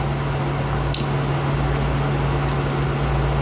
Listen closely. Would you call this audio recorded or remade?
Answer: recorded